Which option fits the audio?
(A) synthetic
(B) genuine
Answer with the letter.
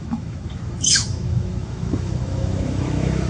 A